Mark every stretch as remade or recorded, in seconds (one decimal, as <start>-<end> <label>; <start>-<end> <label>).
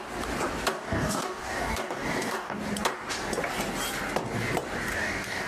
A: 0.0-0.7 recorded; 0.7-2.6 remade; 2.6-4.9 recorded; 4.9-5.5 remade